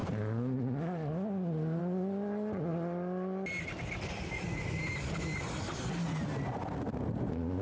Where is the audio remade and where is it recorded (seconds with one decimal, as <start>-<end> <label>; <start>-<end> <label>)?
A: 0.0-7.6 recorded